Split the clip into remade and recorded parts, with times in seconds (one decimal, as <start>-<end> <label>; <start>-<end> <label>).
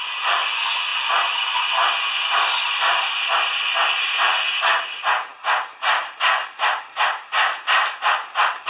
0.0-8.7 recorded